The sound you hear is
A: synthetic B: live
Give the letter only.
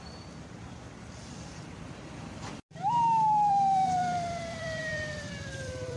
A